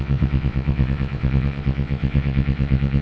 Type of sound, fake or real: fake